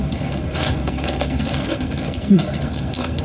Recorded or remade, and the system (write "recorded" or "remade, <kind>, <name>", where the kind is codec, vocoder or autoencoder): remade, codec, SNAC